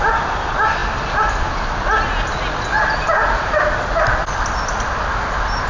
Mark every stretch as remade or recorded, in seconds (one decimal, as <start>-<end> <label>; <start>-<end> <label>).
0.0-5.7 recorded